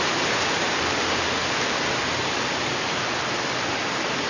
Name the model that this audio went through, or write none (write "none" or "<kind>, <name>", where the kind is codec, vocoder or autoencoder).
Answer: none